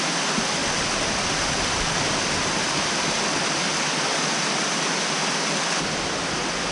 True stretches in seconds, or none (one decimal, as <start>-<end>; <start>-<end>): 0.0-6.7